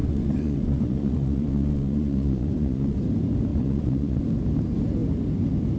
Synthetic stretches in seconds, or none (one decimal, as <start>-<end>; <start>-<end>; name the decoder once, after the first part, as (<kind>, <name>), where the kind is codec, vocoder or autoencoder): 0.0-3.0 (vocoder, Vocos); 3.5-4.2